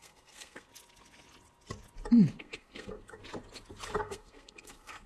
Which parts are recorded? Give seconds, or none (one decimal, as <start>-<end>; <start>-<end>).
0.7-2.4; 3.2-4.0